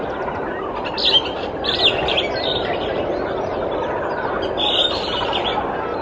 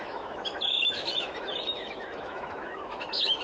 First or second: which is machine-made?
second